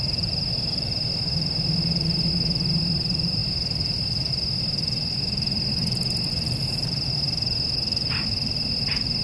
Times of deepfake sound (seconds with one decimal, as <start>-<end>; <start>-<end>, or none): none